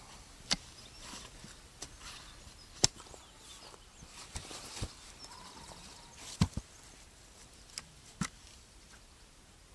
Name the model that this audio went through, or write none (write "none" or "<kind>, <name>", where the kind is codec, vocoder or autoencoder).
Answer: none